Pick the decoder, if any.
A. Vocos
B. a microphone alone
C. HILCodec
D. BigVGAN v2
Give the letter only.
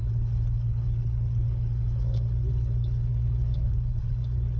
C